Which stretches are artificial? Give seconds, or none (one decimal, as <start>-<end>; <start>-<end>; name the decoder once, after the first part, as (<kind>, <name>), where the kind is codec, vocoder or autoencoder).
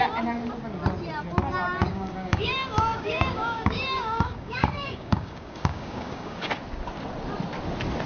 1.9-6.5 (codec, DAC)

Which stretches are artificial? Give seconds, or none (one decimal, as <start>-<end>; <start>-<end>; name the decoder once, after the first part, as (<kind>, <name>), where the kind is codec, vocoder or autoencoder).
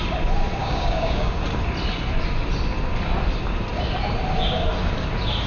0.6-1.3 (codec, DAC)